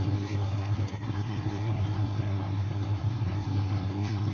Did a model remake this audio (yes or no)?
yes